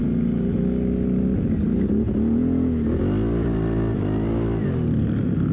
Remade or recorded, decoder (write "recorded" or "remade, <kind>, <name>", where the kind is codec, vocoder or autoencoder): recorded